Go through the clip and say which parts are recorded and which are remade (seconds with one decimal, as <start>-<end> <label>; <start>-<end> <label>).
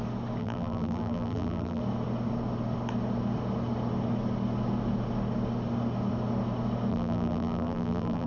0.0-0.4 recorded; 0.4-1.8 remade; 1.8-6.9 recorded; 6.9-8.3 remade